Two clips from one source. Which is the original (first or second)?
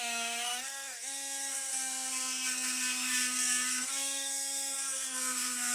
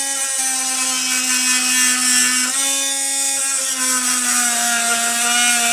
second